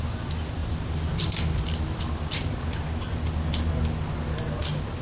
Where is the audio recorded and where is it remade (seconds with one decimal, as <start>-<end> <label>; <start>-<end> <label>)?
0.0-5.0 recorded